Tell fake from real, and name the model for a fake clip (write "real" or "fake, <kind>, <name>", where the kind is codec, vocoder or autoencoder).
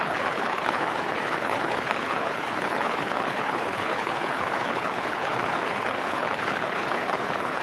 fake, codec, HILCodec